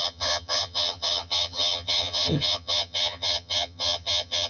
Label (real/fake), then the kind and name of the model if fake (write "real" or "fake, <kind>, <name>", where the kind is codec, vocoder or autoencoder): fake, vocoder, HiFi-GAN